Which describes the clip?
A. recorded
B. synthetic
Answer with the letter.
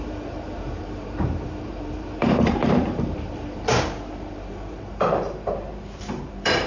B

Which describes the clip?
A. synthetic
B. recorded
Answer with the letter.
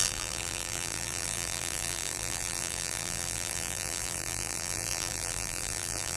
A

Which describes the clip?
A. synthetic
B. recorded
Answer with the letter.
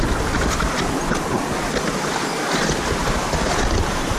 B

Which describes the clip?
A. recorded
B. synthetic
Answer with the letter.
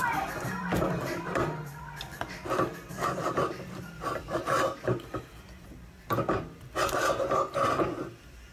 B